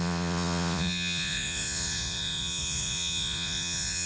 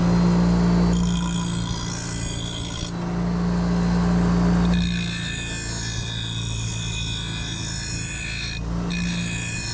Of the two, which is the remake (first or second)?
first